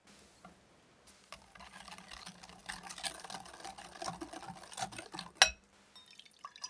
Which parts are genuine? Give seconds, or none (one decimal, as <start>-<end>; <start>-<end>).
0.0-6.7